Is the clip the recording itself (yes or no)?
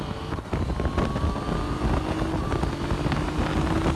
yes